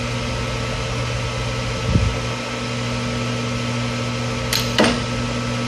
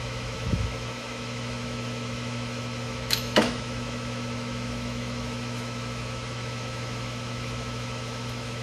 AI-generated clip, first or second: second